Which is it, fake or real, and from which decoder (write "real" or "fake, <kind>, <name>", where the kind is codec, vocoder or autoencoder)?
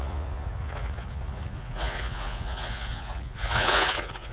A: fake, vocoder, Vocos